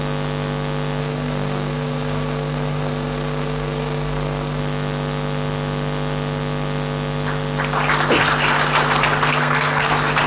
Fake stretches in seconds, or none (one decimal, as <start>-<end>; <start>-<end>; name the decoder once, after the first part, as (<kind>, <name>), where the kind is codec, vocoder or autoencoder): 1.0-4.6 (codec, SNAC); 9.3-9.9